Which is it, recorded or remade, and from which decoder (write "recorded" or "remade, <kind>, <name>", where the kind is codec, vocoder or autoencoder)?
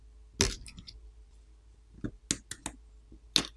recorded